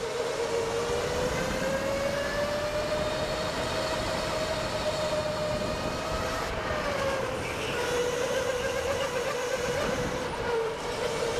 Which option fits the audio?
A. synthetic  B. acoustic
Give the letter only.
B